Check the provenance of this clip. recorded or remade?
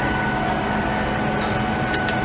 recorded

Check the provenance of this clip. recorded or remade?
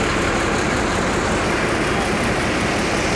recorded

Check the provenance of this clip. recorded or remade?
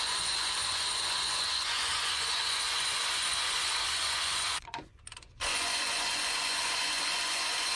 remade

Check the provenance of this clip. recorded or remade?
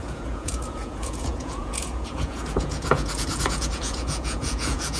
remade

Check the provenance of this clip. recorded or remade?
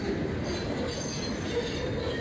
recorded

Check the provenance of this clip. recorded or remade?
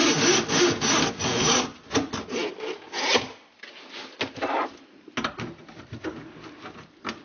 recorded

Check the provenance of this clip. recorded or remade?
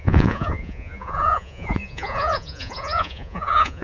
remade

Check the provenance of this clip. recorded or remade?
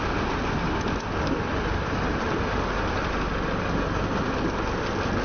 recorded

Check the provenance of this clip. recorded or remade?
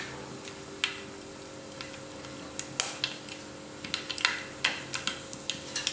recorded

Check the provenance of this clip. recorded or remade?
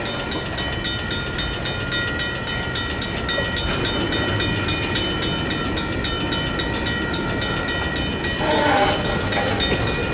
recorded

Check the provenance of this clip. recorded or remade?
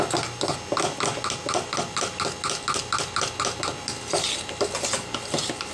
recorded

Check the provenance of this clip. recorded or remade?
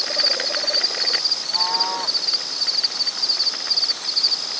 recorded